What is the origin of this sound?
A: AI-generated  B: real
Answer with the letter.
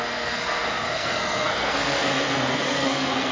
A